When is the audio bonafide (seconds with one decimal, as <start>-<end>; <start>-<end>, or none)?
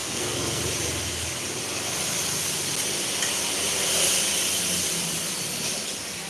0.6-6.3